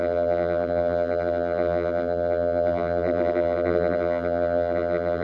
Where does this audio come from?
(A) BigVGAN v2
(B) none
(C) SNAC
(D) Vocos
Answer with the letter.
A